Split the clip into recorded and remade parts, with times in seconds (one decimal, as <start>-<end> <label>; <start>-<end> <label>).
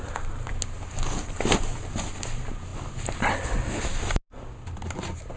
0.0-5.4 recorded